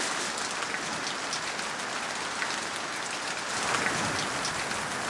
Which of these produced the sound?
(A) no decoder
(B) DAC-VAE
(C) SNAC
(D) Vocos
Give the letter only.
A